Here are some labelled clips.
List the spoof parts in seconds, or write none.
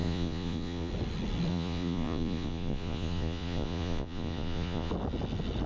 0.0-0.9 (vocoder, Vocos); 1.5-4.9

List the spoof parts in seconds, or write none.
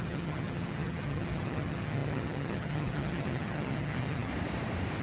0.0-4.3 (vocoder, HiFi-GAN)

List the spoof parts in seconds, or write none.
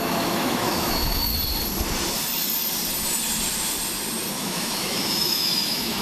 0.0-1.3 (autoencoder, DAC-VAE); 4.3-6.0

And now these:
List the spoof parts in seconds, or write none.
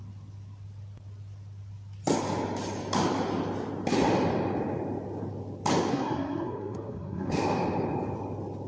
5.9-7.3 (codec, SNAC)